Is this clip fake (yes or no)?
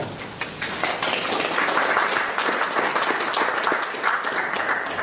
no